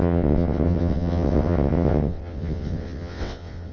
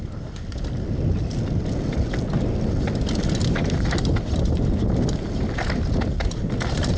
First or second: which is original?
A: second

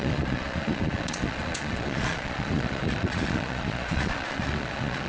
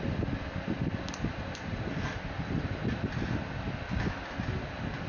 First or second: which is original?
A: second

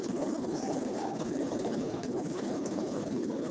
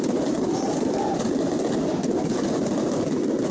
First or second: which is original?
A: second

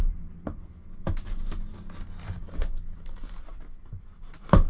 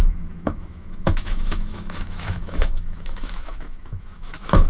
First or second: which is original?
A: first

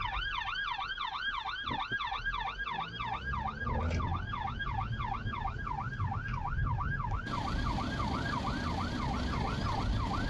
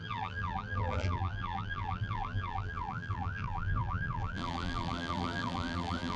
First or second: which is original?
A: first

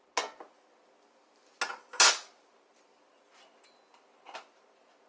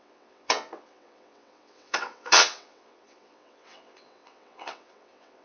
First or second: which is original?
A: first